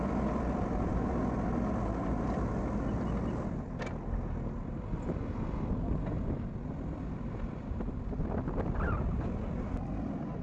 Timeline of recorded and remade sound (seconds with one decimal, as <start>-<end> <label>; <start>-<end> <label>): 0.0-10.4 recorded